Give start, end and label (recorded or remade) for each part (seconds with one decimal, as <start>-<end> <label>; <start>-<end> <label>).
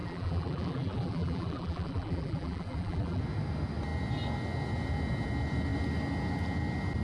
0.0-3.2 remade; 3.2-7.0 recorded